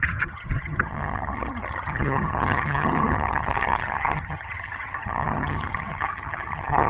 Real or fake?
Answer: fake